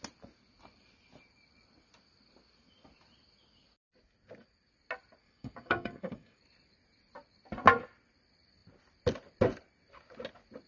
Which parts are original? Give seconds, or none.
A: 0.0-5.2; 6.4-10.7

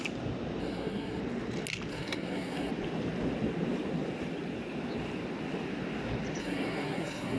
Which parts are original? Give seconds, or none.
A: 0.0-0.6; 1.2-1.9; 2.7-6.4

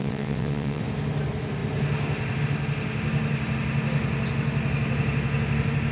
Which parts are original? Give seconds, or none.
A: 0.8-5.9

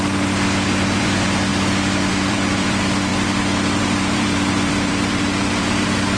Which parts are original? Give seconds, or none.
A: 1.5-2.1; 3.1-3.8

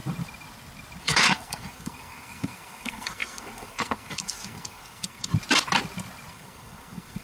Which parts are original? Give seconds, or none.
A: 0.0-1.0; 5.3-6.3

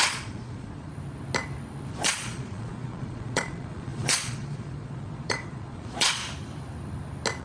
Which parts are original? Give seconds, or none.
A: 0.9-1.9; 6.2-7.4

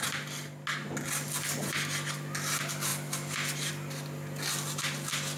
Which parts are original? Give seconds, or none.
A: 0.0-5.4

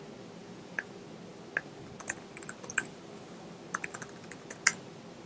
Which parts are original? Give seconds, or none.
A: 0.0-0.4; 0.9-5.3